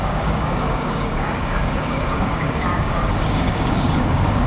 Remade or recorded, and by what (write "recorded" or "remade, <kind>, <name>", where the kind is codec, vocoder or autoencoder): remade, codec, DAC